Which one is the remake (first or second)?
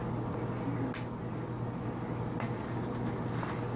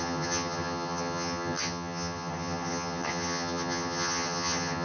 second